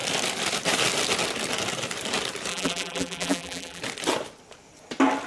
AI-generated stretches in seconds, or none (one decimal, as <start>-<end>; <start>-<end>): 2.5-3.8